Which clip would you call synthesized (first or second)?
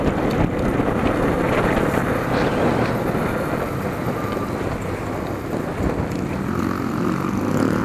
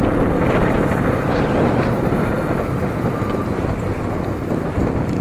second